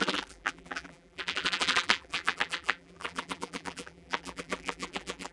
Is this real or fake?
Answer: fake